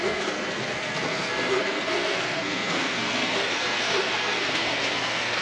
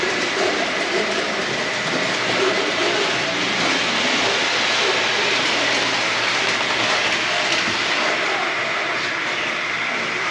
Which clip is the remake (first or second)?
first